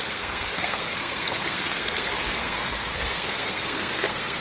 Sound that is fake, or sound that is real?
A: fake